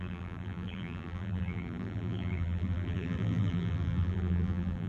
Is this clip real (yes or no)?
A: no